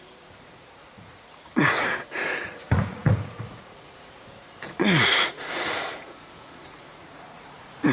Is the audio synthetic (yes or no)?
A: yes